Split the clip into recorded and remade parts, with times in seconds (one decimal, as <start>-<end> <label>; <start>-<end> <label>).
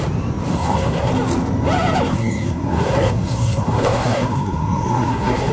0.0-0.5 recorded; 0.5-1.1 remade; 1.1-2.1 recorded; 2.1-5.5 remade